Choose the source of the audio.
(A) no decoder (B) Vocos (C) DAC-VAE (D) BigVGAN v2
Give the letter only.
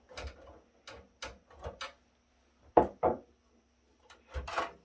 A